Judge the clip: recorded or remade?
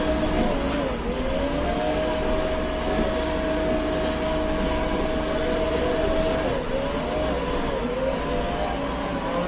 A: recorded